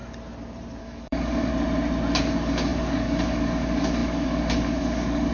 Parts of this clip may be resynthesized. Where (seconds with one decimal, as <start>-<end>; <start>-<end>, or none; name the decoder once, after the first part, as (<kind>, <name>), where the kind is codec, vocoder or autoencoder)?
0.8-1.5 (codec, DAC); 2.2-5.3